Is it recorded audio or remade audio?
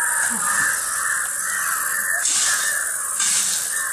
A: recorded